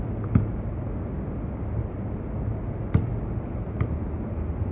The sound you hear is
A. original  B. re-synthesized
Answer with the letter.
A